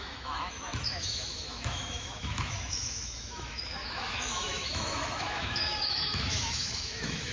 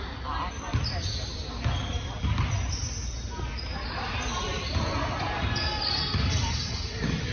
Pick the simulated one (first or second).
first